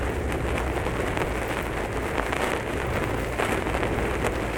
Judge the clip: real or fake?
real